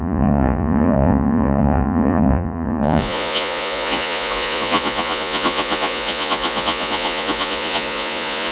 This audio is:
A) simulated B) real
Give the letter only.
A